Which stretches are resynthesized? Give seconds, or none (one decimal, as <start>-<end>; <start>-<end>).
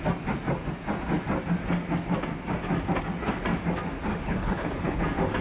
4.1-5.0